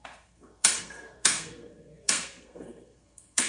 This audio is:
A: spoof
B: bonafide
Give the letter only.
A